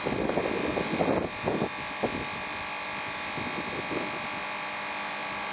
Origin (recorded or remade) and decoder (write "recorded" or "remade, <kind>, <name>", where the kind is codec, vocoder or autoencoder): recorded